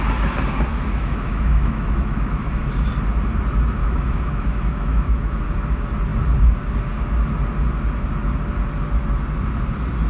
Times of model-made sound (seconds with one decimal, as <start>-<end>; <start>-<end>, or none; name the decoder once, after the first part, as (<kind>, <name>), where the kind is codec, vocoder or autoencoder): 0.7-2.9 (autoencoder, DAC-VAE); 3.8-5.4